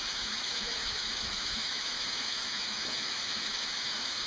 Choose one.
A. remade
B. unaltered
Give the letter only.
A